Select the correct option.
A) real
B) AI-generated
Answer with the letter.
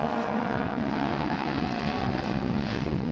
B